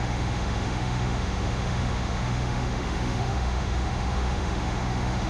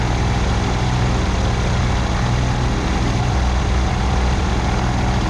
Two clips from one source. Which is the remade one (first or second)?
first